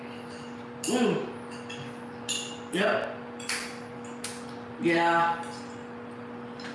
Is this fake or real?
real